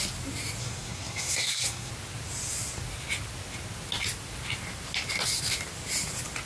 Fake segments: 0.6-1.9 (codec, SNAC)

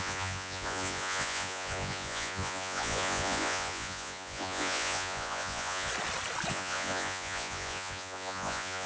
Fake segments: 0.0-5.9 (vocoder, Vocos); 6.5-8.9

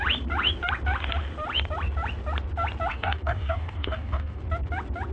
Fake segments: 2.9-4.4 (codec, DAC)

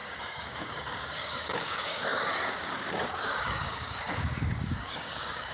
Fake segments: 0.0-5.5 (codec, DAC)

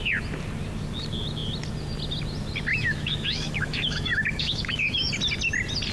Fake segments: 2.7-5.1 (autoencoder, DAC-VAE)

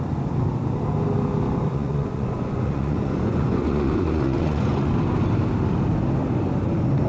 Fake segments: 1.7-4.9 (vocoder, Vocos)